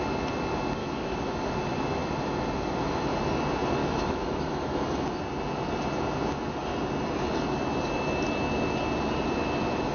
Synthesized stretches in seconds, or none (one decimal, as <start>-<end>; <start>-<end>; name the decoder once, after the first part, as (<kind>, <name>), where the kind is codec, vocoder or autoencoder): 0.8-1.5 (autoencoder, DAC-VAE); 3.8-4.8